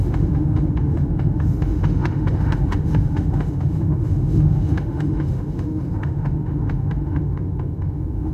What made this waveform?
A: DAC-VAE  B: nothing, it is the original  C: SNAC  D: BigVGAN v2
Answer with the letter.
A